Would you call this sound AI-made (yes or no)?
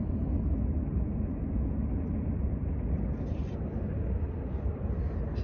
no